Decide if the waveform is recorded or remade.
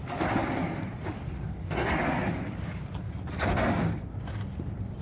recorded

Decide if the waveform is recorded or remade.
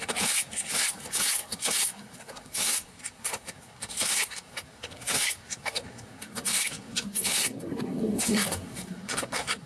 remade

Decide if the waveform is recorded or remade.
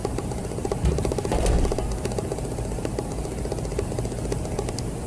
recorded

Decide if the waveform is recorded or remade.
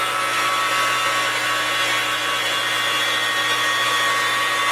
recorded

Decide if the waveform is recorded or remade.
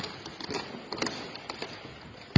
recorded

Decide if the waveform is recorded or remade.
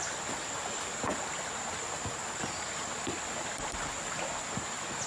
recorded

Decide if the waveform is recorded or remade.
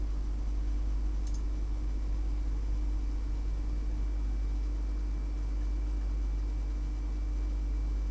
recorded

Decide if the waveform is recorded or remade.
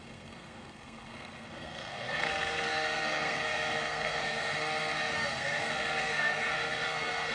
remade